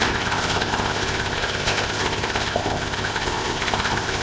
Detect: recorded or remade remade